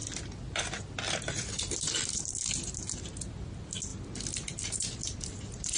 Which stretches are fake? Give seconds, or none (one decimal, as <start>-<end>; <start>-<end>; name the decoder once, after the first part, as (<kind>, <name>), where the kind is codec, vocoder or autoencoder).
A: none